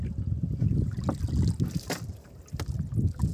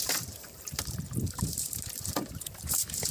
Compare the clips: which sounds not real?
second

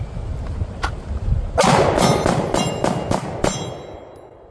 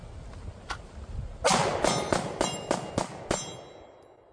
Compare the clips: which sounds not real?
first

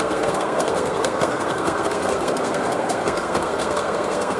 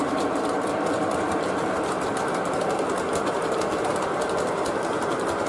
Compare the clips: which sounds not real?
first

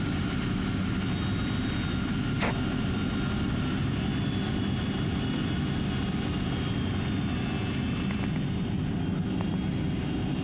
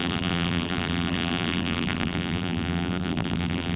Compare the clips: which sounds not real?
second